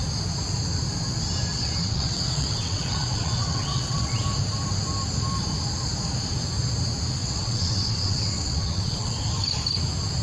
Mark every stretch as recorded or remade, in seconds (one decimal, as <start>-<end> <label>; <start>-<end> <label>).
0.0-1.5 recorded; 1.5-4.2 remade; 4.2-7.2 recorded; 7.2-9.2 remade; 9.2-10.2 recorded